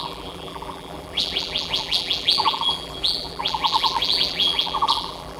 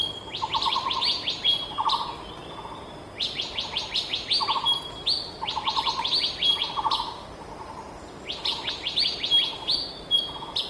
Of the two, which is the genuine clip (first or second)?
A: second